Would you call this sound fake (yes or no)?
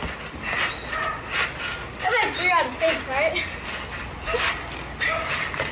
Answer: no